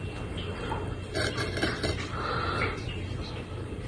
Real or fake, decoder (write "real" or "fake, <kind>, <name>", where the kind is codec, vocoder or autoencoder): real